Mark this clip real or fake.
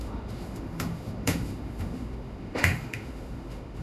fake